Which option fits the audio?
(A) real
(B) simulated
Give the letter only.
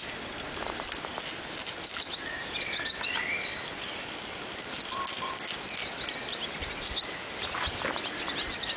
A